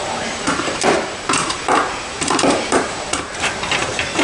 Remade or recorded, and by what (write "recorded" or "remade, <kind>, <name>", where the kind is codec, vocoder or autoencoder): remade, vocoder, BigVGAN v2